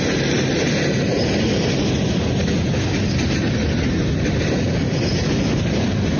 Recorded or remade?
recorded